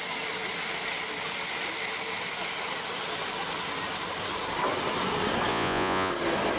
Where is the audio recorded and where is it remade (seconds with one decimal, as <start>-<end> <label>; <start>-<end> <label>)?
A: 0.0-5.5 recorded; 5.5-6.1 remade; 6.1-6.6 recorded